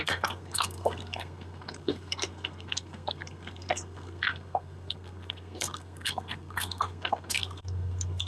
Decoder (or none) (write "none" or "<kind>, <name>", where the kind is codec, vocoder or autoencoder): codec, SNAC